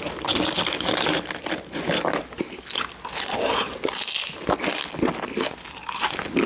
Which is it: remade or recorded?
recorded